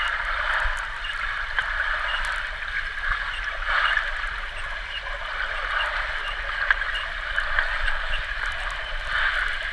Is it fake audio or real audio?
fake